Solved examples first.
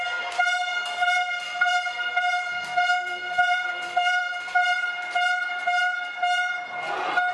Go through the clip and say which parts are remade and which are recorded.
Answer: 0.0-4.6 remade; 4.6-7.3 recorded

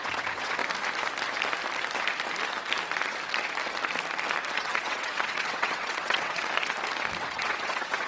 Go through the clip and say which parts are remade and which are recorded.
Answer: 0.0-0.6 remade; 0.6-4.6 recorded; 4.6-6.4 remade; 6.4-7.2 recorded; 7.2-8.1 remade

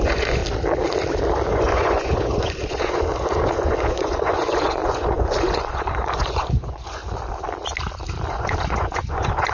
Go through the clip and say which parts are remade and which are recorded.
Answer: 0.0-0.4 remade; 0.4-1.5 recorded; 1.5-7.0 remade; 7.0-8.3 recorded; 8.3-9.5 remade